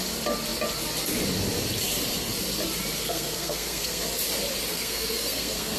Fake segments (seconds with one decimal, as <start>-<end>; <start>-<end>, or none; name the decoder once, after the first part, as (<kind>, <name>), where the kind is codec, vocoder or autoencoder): 3.0-4.0 (codec, SNAC); 4.7-5.8